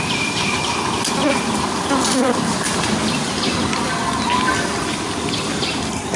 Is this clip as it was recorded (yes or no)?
no